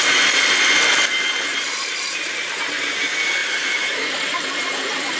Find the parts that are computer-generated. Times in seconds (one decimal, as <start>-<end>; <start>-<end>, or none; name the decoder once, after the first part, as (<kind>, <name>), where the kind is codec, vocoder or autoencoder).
1.5-2.9 (vocoder, BigVGAN v2); 3.4-5.2

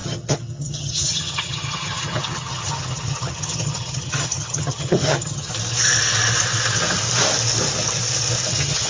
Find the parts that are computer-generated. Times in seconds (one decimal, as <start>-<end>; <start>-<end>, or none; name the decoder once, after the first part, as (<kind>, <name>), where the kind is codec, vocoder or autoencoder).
0.0-5.5 (vocoder, HiFi-GAN); 8.5-8.9

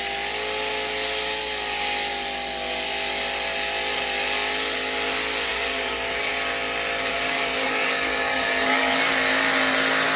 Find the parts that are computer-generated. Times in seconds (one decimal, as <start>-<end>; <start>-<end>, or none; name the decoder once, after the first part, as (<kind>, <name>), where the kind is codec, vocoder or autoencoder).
5.5-6.3 (codec, DAC); 7.1-9.1

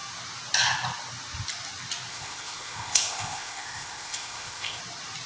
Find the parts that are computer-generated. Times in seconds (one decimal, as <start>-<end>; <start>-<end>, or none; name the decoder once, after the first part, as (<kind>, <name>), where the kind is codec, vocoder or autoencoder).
2.1-4.8 (codec, ZipCodec)